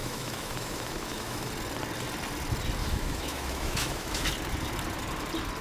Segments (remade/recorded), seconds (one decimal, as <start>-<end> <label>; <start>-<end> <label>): 0.0-1.5 remade; 1.5-2.8 recorded; 2.8-4.3 remade; 4.3-5.6 recorded